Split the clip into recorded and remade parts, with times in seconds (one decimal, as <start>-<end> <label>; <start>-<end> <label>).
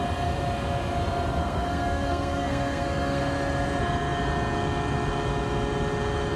0.0-1.4 recorded; 1.4-3.2 remade; 3.2-6.4 recorded